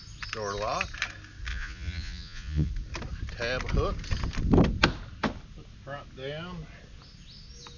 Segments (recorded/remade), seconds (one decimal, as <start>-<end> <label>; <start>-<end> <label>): 0.0-1.5 recorded; 1.5-2.7 remade; 2.7-7.8 recorded